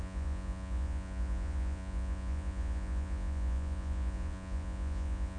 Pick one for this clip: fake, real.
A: fake